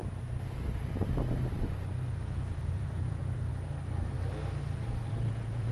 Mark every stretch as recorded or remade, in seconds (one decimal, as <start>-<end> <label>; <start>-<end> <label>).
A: 0.0-2.1 recorded; 2.1-3.5 remade; 3.5-5.1 recorded; 5.1-5.7 remade